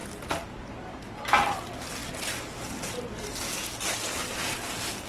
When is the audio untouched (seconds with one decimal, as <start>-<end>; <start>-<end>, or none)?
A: 0.0-5.1